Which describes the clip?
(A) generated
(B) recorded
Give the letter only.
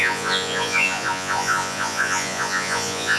A